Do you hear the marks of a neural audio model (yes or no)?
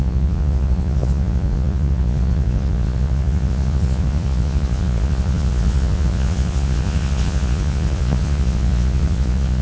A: yes